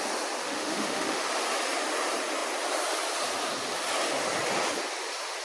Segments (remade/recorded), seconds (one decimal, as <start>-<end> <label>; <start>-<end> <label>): 0.0-0.4 recorded; 0.4-1.3 remade; 1.3-5.4 recorded